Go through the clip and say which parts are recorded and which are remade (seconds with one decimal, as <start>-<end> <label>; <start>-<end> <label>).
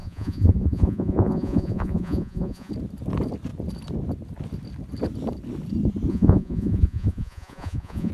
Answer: 0.0-2.7 remade; 2.7-6.1 recorded; 6.1-8.1 remade